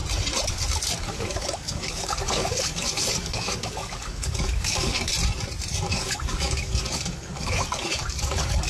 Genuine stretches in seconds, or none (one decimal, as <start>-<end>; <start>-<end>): 0.0-1.0; 5.1-5.7

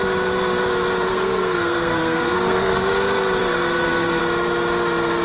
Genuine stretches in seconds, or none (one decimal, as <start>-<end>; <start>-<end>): 0.0-1.1; 2.9-3.4; 4.2-5.2

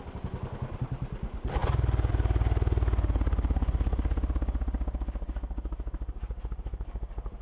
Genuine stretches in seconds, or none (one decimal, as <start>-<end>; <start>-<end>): 0.0-7.4

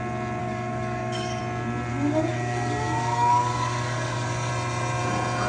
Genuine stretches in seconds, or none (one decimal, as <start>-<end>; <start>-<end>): 0.0-0.4; 1.4-1.9; 4.5-5.5

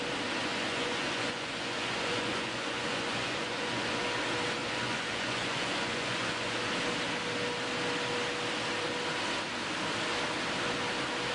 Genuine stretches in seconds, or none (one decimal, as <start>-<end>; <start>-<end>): 0.0-0.4; 4.0-4.6; 6.7-11.3

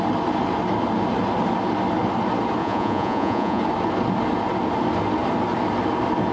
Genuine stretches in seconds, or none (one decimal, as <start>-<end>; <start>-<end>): 0.0-2.6; 3.6-6.3